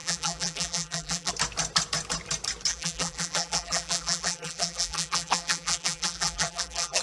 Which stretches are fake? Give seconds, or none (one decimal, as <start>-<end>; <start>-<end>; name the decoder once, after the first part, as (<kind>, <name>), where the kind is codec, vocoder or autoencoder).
0.0-1.3 (vocoder, BigVGAN v2); 2.7-7.0